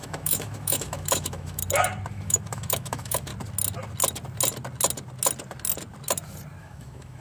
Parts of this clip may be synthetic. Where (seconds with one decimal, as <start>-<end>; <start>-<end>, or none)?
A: 0.0-1.6; 2.1-3.3; 6.6-7.2